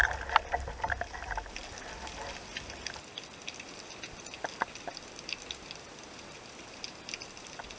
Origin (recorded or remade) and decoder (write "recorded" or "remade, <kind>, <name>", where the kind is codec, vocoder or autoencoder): recorded